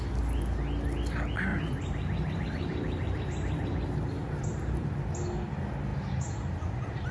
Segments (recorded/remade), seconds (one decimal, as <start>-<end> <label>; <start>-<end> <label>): 0.0-1.5 recorded; 1.5-5.1 remade; 5.1-5.9 recorded; 5.9-7.1 remade